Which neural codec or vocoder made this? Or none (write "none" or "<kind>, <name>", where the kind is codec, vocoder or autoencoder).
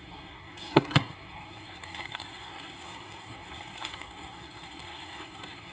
codec, SNAC